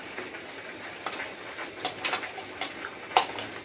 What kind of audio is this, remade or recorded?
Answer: recorded